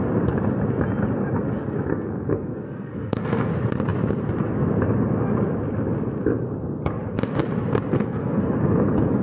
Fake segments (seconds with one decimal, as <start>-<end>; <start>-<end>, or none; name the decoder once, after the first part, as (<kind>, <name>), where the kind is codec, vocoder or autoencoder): 1.9-3.5 (codec, SNAC); 7.9-8.4